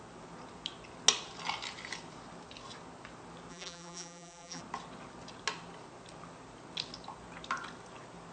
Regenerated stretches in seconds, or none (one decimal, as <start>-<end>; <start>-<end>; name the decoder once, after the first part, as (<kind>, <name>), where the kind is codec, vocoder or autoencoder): 3.5-4.6 (vocoder, BigVGAN v2)